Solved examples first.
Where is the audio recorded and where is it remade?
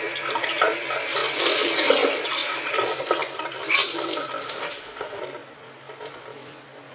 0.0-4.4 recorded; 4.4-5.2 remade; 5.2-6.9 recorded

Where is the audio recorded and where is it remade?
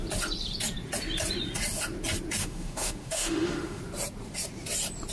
0.0-2.4 recorded; 2.4-3.8 remade; 3.8-5.1 recorded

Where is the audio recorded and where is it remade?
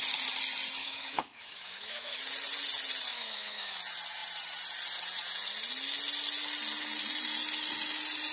0.0-0.8 recorded; 0.8-2.2 remade; 2.2-3.1 recorded; 3.1-3.8 remade; 3.8-8.3 recorded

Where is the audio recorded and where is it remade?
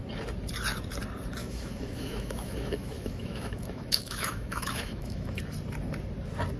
0.0-1.4 recorded; 1.4-5.4 remade; 5.4-6.6 recorded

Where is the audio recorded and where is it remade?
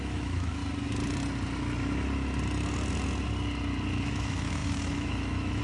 0.0-0.6 remade; 0.6-4.0 recorded; 4.0-5.6 remade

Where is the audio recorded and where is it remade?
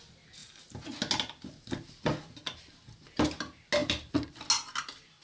0.0-5.2 recorded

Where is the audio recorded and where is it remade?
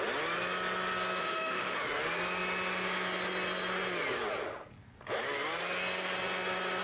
0.0-1.2 recorded; 1.2-1.8 remade; 1.8-6.8 recorded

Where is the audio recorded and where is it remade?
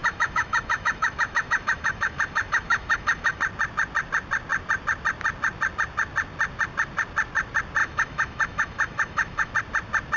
0.0-3.4 remade; 3.4-7.8 recorded; 7.8-9.5 remade; 9.5-10.2 recorded